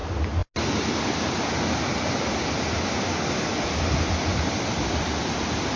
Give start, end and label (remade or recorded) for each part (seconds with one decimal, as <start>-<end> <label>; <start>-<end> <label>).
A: 0.0-3.4 recorded; 3.4-4.3 remade; 4.3-5.8 recorded